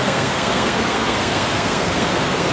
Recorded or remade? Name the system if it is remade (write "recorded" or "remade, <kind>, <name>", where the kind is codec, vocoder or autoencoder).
remade, codec, SNAC